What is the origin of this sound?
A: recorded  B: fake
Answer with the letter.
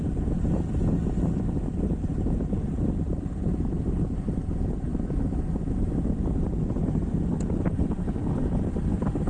A